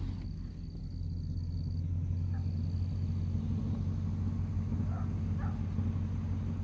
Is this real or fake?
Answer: real